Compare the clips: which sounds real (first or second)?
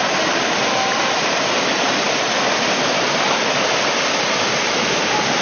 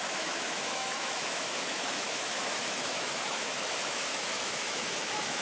first